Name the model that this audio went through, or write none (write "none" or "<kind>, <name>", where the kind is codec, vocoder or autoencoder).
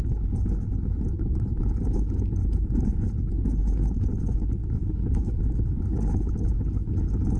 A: codec, HILCodec